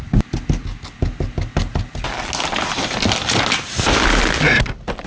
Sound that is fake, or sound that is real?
real